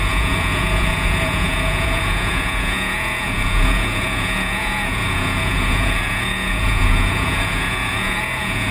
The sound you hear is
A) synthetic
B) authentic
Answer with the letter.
A